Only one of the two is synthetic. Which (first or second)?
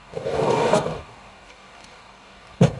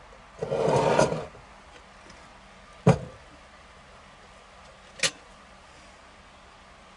first